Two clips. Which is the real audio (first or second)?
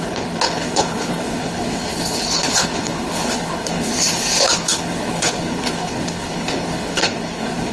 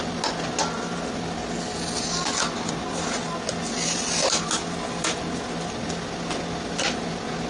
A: second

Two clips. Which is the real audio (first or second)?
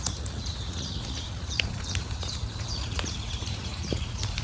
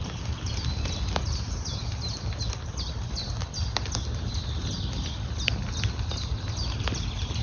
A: second